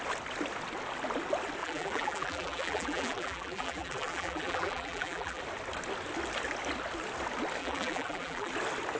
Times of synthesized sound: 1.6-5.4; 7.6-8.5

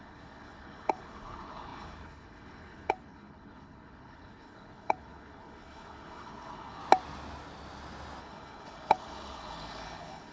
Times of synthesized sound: 0.0-6.8; 8.2-10.3

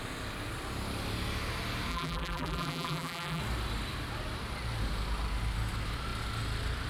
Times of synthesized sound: 1.9-3.4

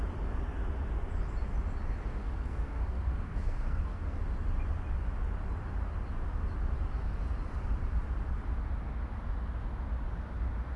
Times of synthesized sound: 2.2-4.2

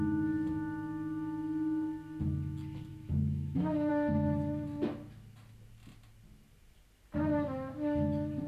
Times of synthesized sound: 2.9-3.9